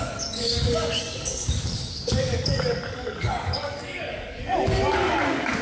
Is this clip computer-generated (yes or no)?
yes